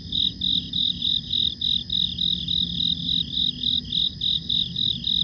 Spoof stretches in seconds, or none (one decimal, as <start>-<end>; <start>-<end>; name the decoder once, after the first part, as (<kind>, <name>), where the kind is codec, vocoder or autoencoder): none